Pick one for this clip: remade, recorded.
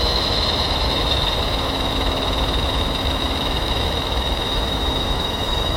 remade